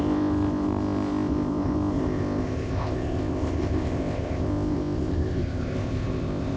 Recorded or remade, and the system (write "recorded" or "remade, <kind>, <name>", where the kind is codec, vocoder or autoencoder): remade, codec, ZipCodec